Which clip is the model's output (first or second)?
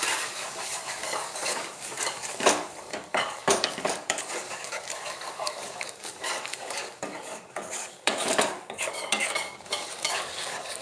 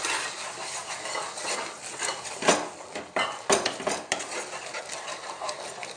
first